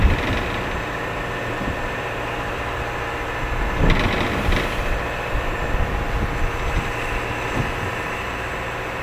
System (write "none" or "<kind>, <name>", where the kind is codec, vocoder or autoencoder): none